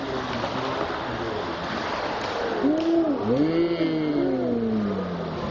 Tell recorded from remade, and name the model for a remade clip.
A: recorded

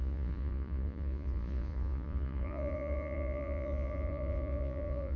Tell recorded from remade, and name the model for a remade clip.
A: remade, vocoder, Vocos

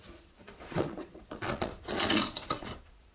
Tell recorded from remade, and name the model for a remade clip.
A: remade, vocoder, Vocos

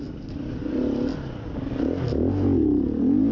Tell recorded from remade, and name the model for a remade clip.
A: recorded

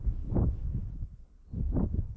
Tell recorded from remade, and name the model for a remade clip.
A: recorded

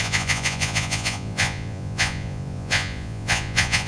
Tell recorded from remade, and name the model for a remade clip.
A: remade, vocoder, Vocos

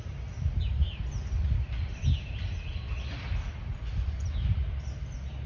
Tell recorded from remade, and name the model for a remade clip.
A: recorded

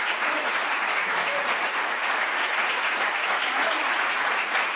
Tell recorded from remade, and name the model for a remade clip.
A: remade, vocoder, Vocos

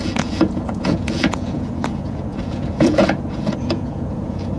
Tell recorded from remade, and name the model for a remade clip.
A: remade, vocoder, Vocos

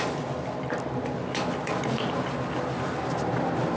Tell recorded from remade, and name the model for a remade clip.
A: recorded